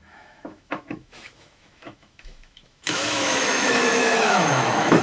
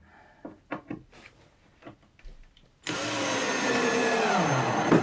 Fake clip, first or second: first